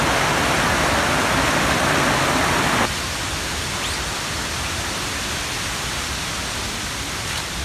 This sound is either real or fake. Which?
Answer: real